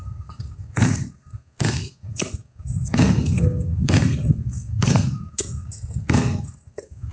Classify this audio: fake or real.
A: fake